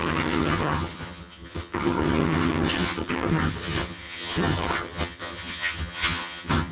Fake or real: fake